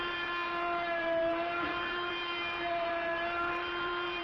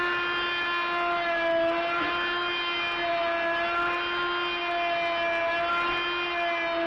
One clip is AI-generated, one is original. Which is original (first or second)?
second